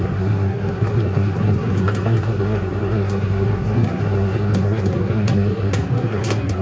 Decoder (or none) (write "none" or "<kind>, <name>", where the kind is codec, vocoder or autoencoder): codec, SNAC